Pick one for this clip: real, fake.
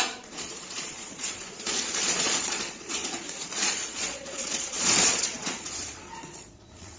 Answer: fake